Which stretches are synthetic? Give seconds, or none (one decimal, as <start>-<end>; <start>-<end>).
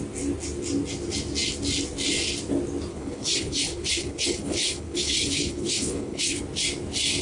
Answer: 2.9-6.4